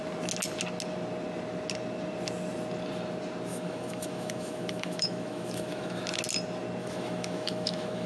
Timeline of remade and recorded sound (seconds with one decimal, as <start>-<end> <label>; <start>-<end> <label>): 0.0-3.5 recorded; 3.5-6.0 remade; 6.0-6.8 recorded; 6.8-8.1 remade